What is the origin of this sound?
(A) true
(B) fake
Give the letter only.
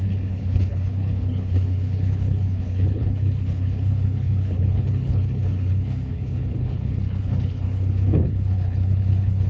B